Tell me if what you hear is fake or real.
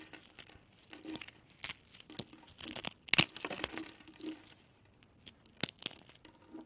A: real